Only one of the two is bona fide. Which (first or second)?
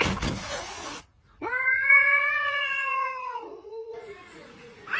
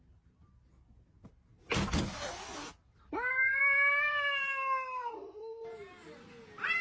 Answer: second